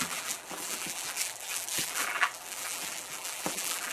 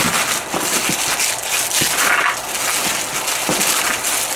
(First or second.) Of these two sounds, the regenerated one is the first